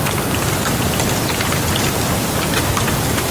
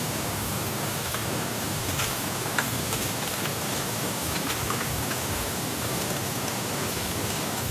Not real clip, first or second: second